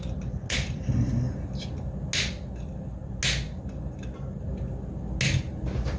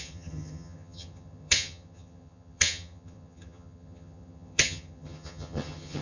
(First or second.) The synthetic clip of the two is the second